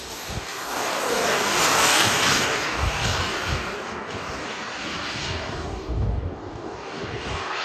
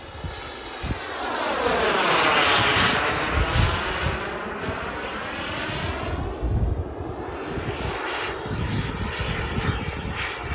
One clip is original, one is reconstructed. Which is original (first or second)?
second